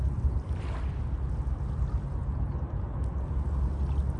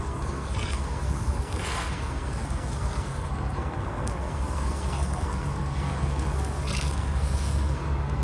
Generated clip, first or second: second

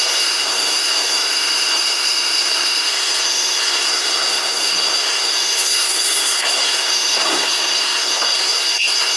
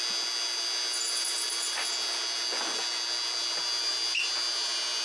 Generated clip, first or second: first